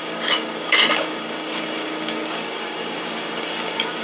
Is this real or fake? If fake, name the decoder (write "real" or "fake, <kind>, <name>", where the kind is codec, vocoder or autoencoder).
fake, codec, DAC